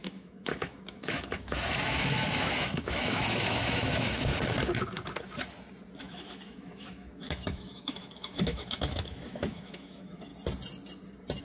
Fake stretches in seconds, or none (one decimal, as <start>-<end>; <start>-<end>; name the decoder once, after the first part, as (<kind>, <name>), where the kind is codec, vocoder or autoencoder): 0.0-4.3 (autoencoder, DAC-VAE); 6.0-10.3